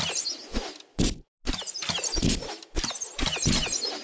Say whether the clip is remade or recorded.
recorded